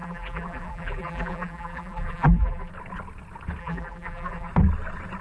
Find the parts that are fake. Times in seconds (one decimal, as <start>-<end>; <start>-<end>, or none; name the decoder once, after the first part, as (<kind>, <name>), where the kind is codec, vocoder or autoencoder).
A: 0.0-2.7 (vocoder, BigVGAN v2); 3.6-4.5